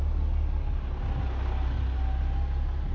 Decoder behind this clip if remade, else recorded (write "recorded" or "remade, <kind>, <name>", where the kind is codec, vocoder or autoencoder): recorded